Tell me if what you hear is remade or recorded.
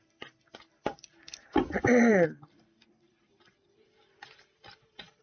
remade